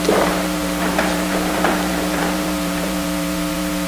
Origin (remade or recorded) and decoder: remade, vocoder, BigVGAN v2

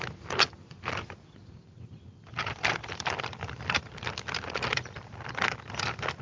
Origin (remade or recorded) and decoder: recorded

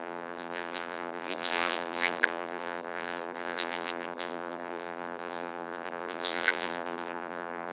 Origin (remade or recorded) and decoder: remade, vocoder, BigVGAN v2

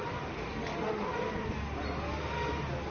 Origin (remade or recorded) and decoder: recorded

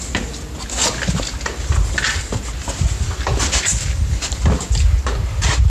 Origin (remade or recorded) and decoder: recorded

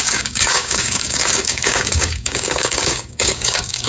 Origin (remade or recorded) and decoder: remade, codec, DAC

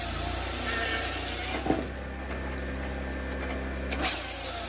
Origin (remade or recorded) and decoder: recorded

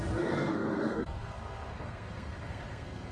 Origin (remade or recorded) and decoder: remade, codec, SNAC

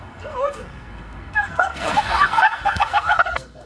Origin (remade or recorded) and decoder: remade, codec, SNAC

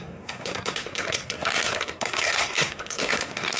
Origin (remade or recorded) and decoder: remade, codec, SNAC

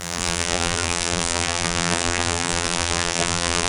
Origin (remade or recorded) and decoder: remade, vocoder, BigVGAN v2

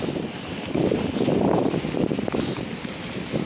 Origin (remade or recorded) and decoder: recorded